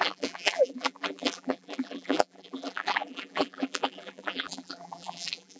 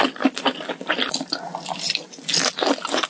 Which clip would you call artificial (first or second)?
first